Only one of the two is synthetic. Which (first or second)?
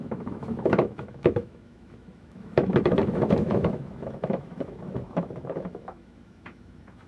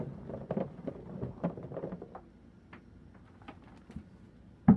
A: first